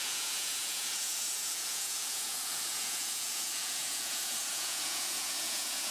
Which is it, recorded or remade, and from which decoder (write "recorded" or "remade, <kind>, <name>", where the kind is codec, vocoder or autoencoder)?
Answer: remade, vocoder, Vocos